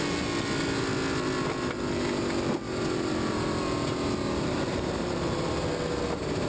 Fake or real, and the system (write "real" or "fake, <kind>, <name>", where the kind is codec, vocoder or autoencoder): real